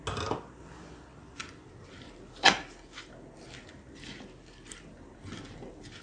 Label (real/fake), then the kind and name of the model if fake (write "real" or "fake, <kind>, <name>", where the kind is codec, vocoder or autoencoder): real